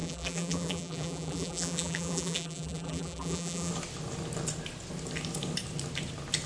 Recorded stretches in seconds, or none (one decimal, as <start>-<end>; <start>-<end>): 3.7-6.5